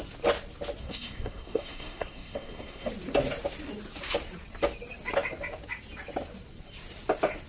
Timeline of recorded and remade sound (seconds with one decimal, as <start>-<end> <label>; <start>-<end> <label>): 0.0-0.8 recorded; 0.8-2.9 remade; 2.9-7.5 recorded